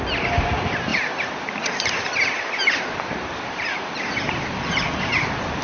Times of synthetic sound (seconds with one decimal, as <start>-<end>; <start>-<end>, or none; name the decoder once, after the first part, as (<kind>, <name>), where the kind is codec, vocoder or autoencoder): none